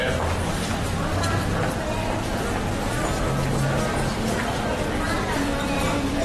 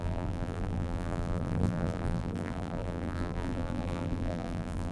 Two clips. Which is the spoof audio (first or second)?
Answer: second